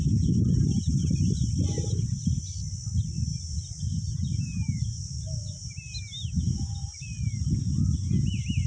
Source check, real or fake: real